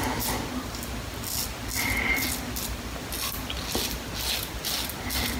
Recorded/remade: recorded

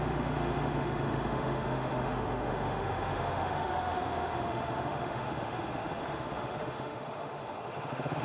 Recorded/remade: remade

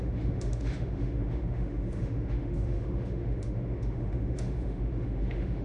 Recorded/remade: remade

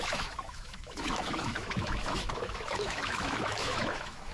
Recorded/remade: remade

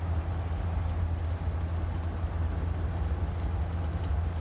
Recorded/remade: recorded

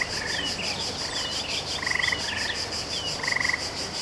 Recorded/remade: recorded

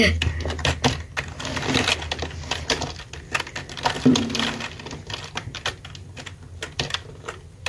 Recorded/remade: recorded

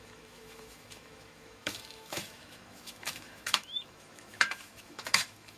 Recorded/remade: remade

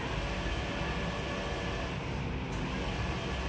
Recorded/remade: recorded